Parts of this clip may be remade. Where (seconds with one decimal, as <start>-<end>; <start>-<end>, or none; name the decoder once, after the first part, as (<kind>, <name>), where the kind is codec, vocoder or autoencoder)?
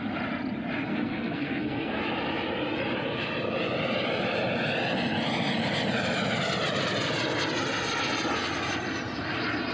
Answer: 0.9-2.0 (codec, SNAC)